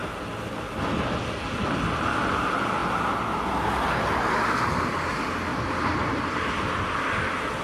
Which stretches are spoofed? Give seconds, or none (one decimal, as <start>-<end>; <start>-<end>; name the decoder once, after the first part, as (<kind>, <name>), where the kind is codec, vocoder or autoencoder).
5.5-6.4 (vocoder, BigVGAN v2)